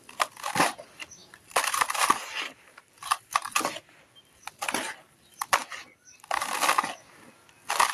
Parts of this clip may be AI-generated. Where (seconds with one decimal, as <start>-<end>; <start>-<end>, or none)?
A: 1.2-3.6